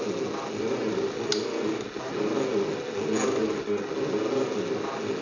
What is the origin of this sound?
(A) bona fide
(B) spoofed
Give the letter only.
A